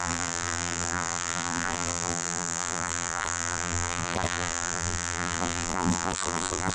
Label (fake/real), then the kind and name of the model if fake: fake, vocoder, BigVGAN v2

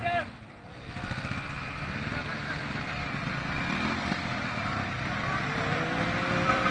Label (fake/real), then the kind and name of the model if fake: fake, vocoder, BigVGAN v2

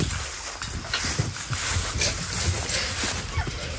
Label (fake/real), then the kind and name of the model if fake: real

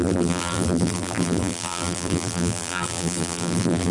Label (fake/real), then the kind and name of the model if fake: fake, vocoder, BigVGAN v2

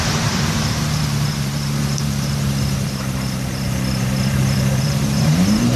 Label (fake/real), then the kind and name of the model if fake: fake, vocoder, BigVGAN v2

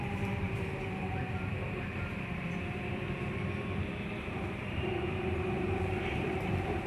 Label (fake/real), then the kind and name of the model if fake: fake, vocoder, BigVGAN v2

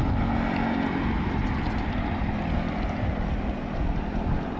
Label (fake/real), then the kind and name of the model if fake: real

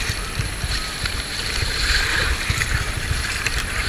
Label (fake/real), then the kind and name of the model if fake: fake, vocoder, BigVGAN v2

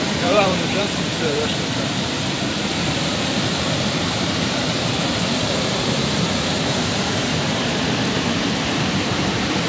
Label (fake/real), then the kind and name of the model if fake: fake, vocoder, BigVGAN v2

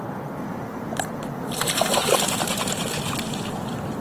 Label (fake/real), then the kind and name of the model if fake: real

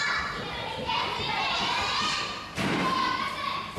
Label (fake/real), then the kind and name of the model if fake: fake, vocoder, BigVGAN v2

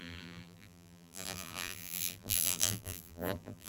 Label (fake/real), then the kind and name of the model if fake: fake, vocoder, BigVGAN v2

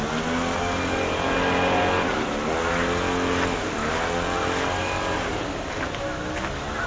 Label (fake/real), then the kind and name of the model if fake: real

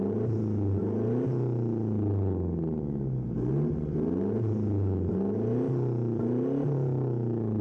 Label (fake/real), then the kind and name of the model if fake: real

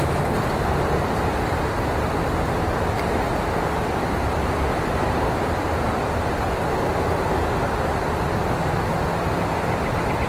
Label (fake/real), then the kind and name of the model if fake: real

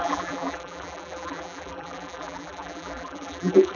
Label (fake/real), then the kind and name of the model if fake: fake, vocoder, BigVGAN v2